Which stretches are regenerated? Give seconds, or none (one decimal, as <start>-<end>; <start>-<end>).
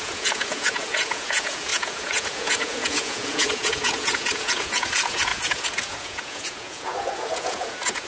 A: 0.0-8.1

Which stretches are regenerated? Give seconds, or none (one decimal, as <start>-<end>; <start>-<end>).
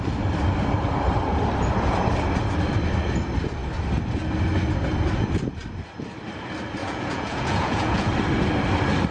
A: 6.8-8.1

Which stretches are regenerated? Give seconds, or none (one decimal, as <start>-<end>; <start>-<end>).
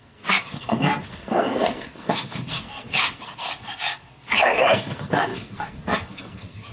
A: 0.0-6.7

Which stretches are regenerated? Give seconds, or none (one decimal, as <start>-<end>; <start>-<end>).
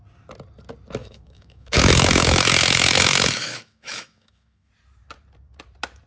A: 1.0-4.7